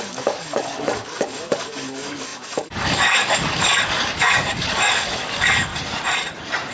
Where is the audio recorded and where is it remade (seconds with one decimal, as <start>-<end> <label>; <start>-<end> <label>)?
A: 0.0-5.7 remade; 5.7-6.7 recorded